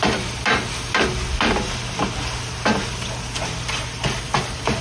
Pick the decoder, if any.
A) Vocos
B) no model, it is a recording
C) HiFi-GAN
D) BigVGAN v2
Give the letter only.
B